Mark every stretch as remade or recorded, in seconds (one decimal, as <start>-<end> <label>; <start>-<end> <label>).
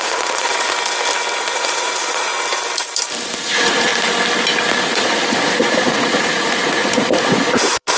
0.0-0.5 remade; 0.5-1.4 recorded; 1.4-2.3 remade; 2.3-3.4 recorded; 3.4-3.9 remade; 3.9-4.8 recorded; 4.8-8.0 remade